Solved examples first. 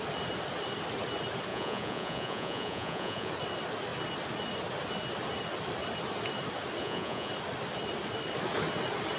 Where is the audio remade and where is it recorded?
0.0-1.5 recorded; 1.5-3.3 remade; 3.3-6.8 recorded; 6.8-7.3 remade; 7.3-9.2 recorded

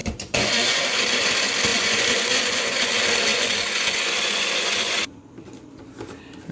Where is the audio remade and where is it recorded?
0.0-0.8 remade; 0.8-1.7 recorded; 1.7-2.9 remade; 2.9-3.3 recorded; 3.3-5.3 remade; 5.3-6.5 recorded

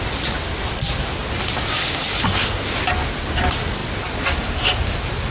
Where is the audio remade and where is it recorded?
0.0-5.3 recorded

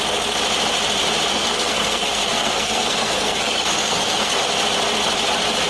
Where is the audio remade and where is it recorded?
0.0-1.3 recorded; 1.3-4.4 remade; 4.4-5.7 recorded